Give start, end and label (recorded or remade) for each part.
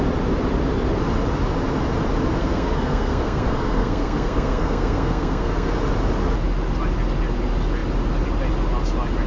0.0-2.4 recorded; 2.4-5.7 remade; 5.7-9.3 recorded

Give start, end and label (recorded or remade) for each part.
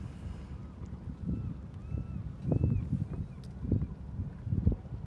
0.0-5.1 recorded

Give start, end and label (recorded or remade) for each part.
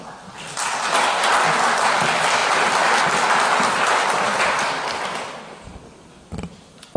0.0-7.0 recorded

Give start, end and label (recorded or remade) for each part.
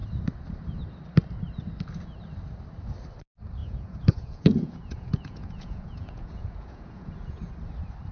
0.0-3.6 recorded; 3.6-7.5 remade; 7.5-8.1 recorded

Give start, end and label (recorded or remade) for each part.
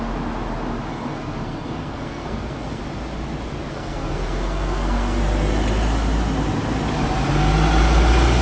0.0-0.9 recorded; 0.9-2.8 remade; 2.8-3.7 recorded; 3.7-5.2 remade; 5.2-8.4 recorded